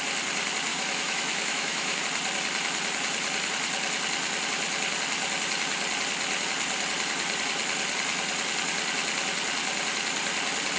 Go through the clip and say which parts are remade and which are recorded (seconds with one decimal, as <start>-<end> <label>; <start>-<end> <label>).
0.0-0.7 recorded; 0.7-2.0 remade; 2.0-10.8 recorded